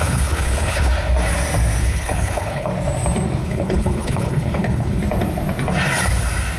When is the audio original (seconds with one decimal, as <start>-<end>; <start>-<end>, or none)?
0.9-1.8; 2.7-3.4; 5.0-6.6